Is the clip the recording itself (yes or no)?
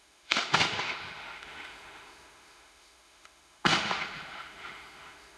no